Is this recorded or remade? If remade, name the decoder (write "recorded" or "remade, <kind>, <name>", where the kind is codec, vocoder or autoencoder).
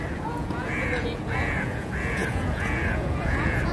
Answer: remade, vocoder, Vocos